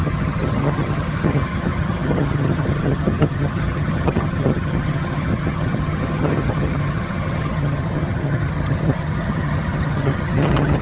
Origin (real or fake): fake